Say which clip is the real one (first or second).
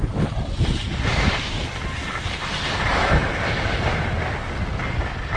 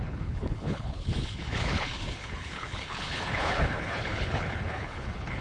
first